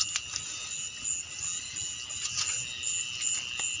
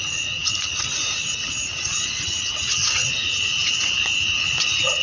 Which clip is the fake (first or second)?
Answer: second